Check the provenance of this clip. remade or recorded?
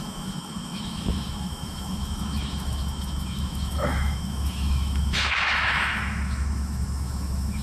remade